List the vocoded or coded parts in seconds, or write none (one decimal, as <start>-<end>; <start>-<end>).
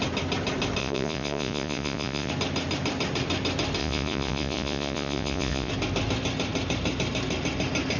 0.8-2.3; 3.8-5.7